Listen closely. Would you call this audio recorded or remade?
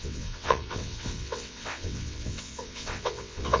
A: remade